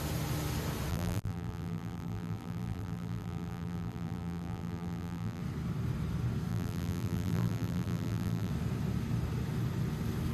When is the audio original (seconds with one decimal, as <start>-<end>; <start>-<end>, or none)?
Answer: 0.0-0.9; 5.4-6.5; 8.5-10.3